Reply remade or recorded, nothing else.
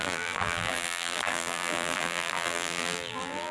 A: remade